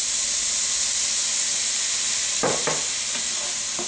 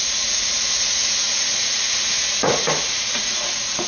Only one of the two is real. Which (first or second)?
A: first